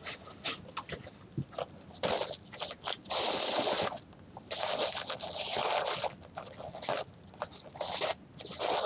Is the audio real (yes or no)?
yes